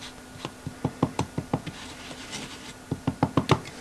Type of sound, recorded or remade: recorded